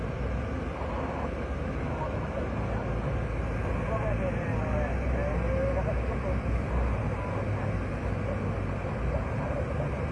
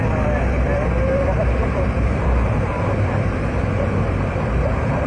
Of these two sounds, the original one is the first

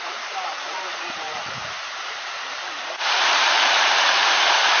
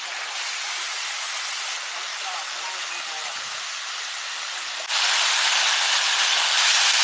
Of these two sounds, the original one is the second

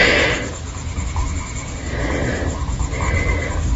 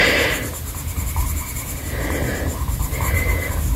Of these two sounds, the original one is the first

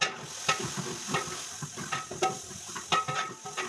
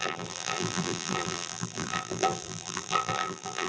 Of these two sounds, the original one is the first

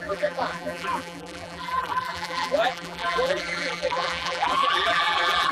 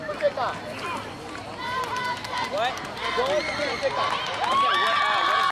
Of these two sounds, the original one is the second